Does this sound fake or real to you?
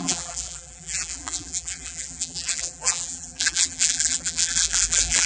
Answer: fake